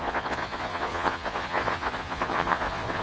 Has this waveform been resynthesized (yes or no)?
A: yes